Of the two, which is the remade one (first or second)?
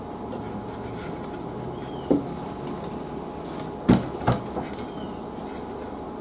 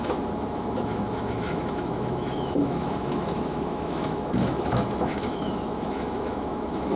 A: second